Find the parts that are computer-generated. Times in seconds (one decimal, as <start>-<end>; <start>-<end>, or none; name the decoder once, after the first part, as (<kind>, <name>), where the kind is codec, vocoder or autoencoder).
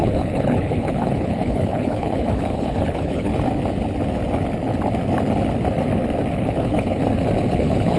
0.0-3.3 (codec, HILCodec); 6.3-7.0; 7.5-8.0